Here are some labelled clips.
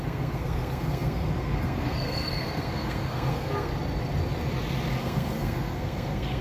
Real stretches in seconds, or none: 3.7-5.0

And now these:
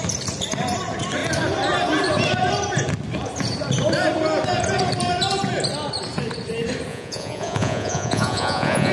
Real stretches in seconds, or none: 0.0-6.9

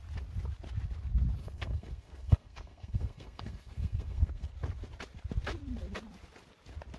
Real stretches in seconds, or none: 0.0-1.4; 4.5-7.0

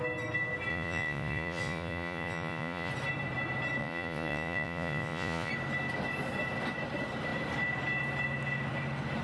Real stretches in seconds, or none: 0.0-0.7; 2.9-3.8; 5.5-9.2